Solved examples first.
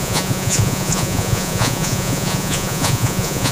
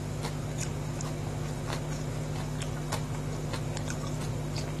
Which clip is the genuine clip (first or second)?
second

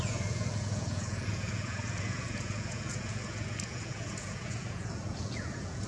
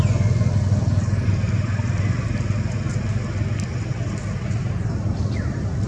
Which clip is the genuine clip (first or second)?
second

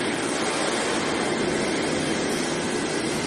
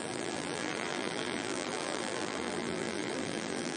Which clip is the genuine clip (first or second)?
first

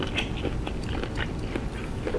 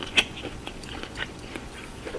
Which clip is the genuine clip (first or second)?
first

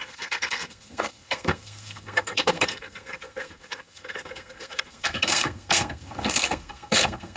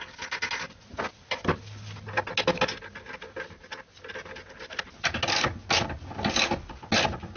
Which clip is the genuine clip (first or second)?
second